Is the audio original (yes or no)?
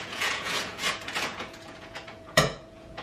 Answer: no